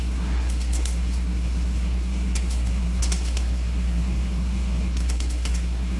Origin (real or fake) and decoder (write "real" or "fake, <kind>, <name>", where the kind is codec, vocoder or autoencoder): fake, codec, SNAC